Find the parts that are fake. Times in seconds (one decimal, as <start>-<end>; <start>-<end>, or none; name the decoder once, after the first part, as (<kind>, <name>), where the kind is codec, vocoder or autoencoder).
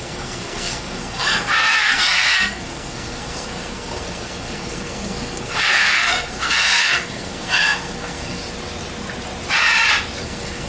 0.0-8.4 (codec, SNAC); 10.2-10.7